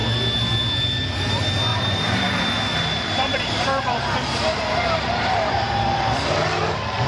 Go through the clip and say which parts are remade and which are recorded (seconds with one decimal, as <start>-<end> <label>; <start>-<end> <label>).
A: 0.0-1.7 recorded; 1.7-6.0 remade; 6.0-7.1 recorded